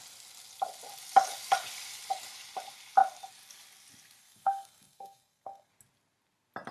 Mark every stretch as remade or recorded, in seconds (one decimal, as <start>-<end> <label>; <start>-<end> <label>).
0.0-4.2 recorded; 4.2-5.7 remade; 5.7-6.7 recorded